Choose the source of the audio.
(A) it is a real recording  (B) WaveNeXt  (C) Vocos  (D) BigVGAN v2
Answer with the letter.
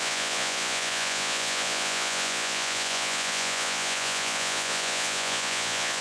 C